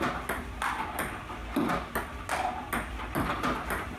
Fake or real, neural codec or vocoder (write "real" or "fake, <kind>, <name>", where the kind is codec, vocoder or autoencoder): real